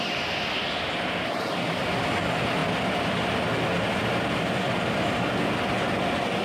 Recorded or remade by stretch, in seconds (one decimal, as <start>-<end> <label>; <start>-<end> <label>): 0.0-6.4 recorded

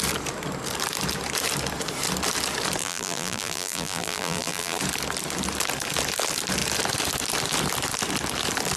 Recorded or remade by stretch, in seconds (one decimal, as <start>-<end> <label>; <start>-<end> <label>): 0.0-2.8 recorded; 2.8-4.8 remade; 4.8-8.8 recorded